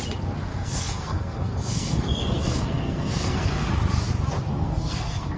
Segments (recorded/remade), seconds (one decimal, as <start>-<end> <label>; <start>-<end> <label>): 0.0-0.5 recorded; 0.5-3.7 remade; 3.7-4.5 recorded; 4.5-5.4 remade